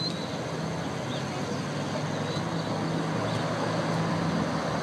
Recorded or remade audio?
recorded